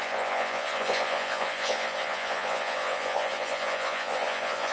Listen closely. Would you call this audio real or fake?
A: fake